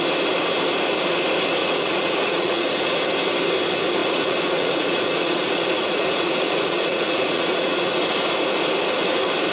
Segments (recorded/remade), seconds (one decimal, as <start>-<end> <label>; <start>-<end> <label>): 0.0-1.6 recorded; 1.6-3.0 remade; 3.0-4.0 recorded; 4.0-8.0 remade; 8.0-9.5 recorded